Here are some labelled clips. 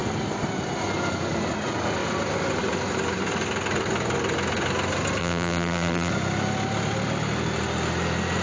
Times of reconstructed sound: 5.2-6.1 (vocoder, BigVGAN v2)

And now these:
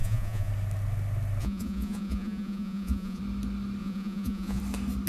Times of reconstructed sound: 0.0-0.5 (vocoder, Vocos); 1.4-3.2; 3.8-4.6

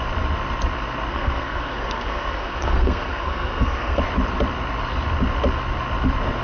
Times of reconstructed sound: 1.1-4.0 (codec, SNAC)

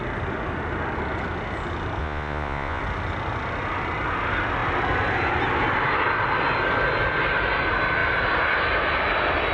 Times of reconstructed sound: 2.0-2.8 (vocoder, Vocos)

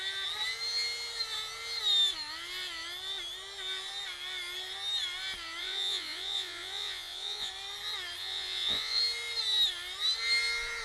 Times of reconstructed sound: 5.6-7.5 (vocoder, Vocos); 8.2-9.0

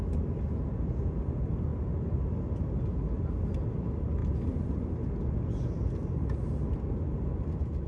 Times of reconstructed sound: none